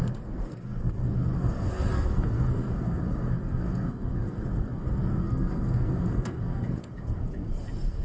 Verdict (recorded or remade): remade